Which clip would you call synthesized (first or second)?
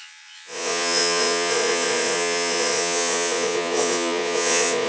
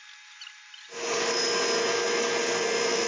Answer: first